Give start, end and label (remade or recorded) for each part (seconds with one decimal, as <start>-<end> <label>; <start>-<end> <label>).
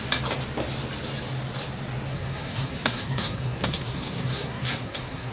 0.0-2.1 recorded; 2.1-5.3 remade